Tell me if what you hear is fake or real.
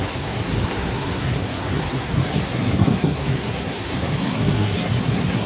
fake